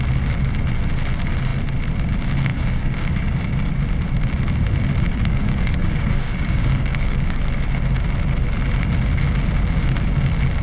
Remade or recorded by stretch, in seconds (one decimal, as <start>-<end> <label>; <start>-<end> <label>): 0.0-2.5 recorded; 2.5-3.7 remade; 3.7-5.1 recorded; 5.1-7.4 remade; 7.4-10.6 recorded